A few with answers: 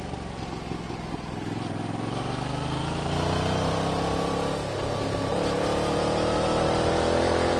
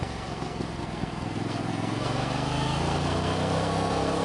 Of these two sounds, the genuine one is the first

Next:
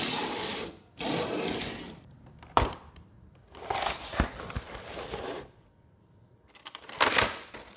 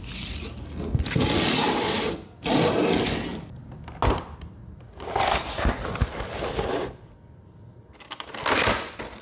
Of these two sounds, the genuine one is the second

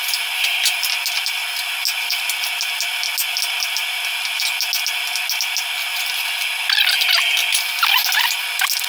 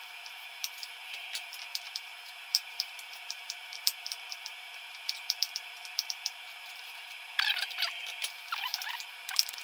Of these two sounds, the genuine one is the first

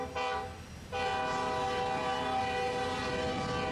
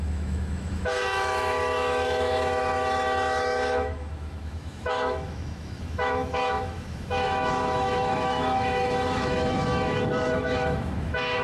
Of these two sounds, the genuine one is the first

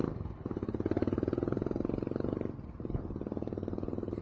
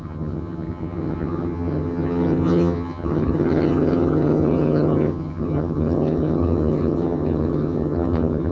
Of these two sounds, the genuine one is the first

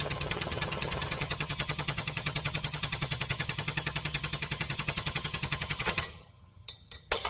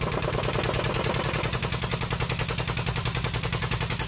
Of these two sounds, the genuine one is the second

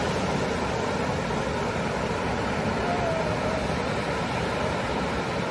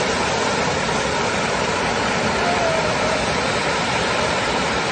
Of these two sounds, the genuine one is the first